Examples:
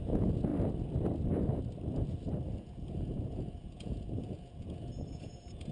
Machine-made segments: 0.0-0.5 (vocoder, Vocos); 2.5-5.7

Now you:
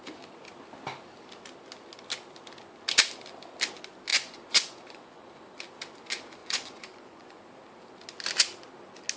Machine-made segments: 4.1-5.3 (vocoder, Vocos); 6.4-7.4

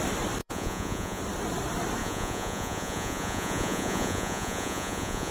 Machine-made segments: 0.4-1.2 (vocoder, Vocos); 2.0-5.3

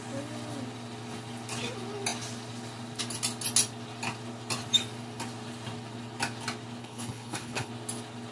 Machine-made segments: 6.8-7.7 (codec, HILCodec)

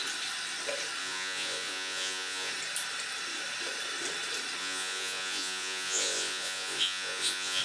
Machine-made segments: 1.0-2.5 (vocoder, Vocos); 4.6-7.6

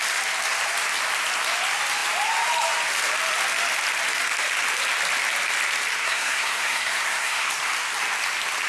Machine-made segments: 6.0-7.5 (codec, SNAC)

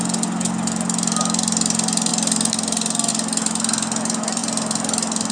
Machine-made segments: none